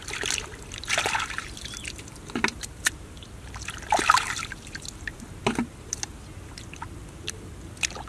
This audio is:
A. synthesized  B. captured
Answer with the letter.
A